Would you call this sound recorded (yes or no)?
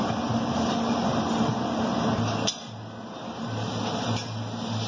yes